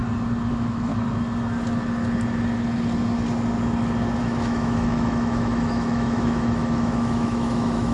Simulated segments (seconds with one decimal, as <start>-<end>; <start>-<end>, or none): 0.5-0.9; 4.2-7.9